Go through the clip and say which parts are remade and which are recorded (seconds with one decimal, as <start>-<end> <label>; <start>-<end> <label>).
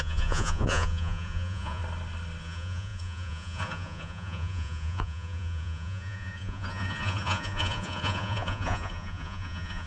0.0-1.8 remade; 1.8-2.4 recorded; 2.4-9.9 remade